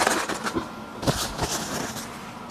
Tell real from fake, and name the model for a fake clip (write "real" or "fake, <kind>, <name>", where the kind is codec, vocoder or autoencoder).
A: real